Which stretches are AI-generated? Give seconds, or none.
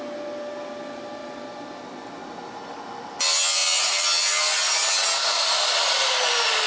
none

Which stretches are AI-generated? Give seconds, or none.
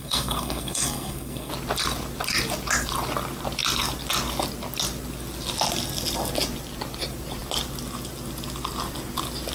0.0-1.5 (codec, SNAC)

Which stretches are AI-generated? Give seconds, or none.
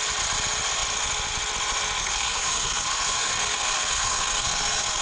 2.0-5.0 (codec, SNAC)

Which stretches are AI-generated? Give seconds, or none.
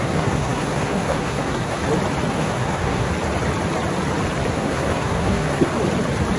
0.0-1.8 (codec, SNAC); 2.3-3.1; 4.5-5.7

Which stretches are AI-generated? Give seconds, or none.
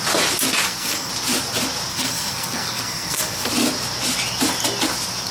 0.6-1.1 (codec, SNAC); 1.9-3.5